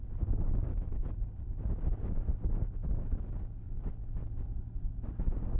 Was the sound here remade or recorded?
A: recorded